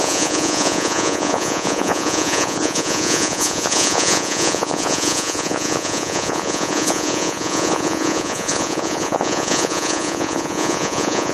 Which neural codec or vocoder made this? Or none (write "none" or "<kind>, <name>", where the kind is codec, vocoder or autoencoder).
vocoder, Vocos